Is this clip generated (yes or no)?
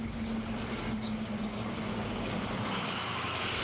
yes